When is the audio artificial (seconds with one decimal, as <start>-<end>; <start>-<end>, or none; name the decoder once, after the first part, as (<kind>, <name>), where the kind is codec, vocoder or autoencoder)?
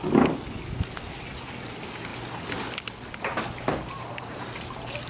none